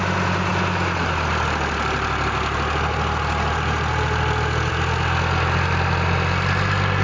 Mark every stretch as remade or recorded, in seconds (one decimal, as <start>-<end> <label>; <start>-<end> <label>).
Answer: 0.0-7.0 recorded